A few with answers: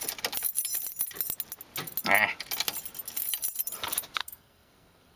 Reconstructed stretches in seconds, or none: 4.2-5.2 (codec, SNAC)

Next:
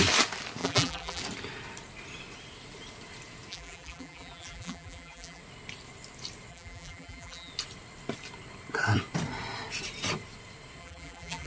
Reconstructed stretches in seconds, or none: 0.6-1.2 (vocoder, BigVGAN v2); 3.5-5.4; 6.5-7.5; 10.8-11.5